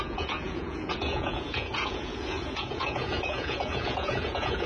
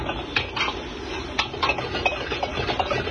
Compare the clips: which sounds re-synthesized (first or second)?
first